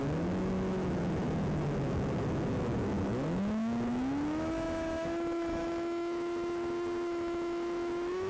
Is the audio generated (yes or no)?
yes